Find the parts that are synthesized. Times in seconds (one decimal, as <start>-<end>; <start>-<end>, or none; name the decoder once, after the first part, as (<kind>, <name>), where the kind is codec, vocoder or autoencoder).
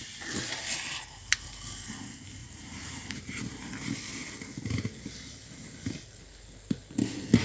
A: 2.4-3.7 (vocoder, BigVGAN v2)